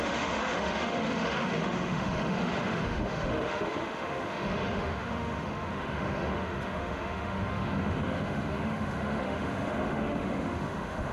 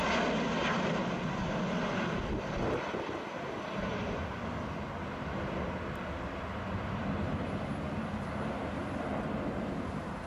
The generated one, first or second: first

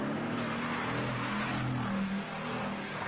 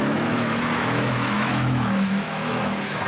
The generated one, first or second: second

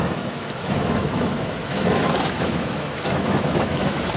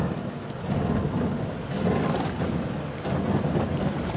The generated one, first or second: first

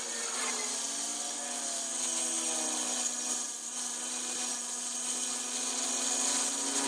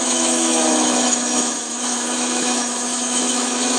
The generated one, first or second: second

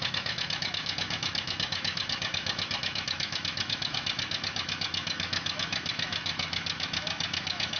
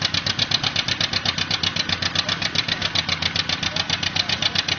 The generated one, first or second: first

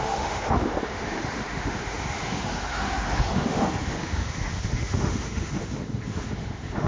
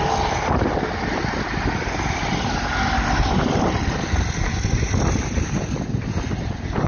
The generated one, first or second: first